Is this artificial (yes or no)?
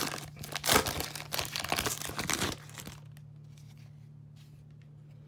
no